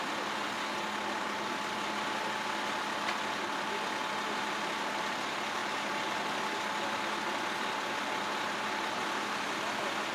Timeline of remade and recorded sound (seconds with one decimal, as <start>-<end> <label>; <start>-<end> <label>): 0.0-10.1 recorded